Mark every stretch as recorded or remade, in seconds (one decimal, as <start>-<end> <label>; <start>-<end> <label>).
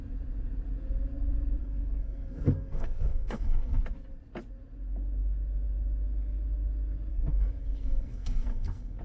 0.0-1.6 recorded; 1.6-3.8 remade; 3.8-7.1 recorded; 7.1-9.0 remade